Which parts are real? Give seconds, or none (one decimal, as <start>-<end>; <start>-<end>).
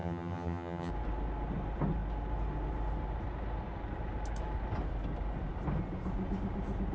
0.9-6.9